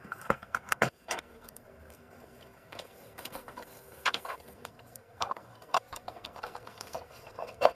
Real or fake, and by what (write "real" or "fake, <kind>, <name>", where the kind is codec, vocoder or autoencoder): fake, codec, SNAC